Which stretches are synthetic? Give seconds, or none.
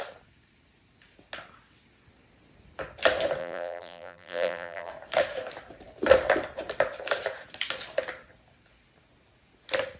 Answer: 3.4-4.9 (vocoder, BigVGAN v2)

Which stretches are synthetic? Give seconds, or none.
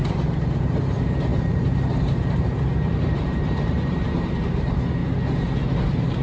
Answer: 0.0-5.0 (vocoder, BigVGAN v2); 5.7-6.2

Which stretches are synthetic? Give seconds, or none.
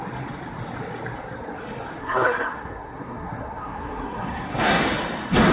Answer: 2.0-4.8 (codec, SNAC)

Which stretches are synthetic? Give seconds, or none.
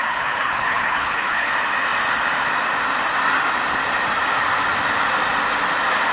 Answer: 0.0-1.5 (codec, HILCodec)